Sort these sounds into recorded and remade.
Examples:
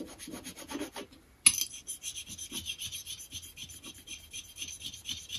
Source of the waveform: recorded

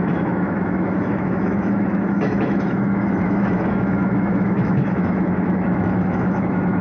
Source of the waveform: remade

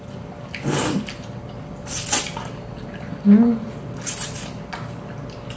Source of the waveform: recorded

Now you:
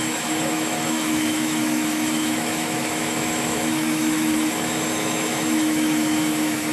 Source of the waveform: remade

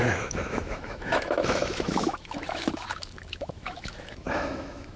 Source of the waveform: remade